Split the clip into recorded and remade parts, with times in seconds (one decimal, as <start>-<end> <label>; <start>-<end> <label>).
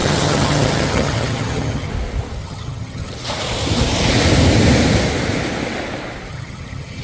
0.0-1.9 remade; 1.9-2.4 recorded; 2.4-3.1 remade; 3.1-6.3 recorded; 6.3-7.0 remade